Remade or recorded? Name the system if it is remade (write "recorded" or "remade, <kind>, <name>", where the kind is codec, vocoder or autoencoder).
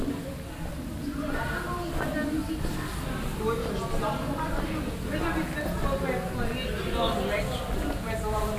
recorded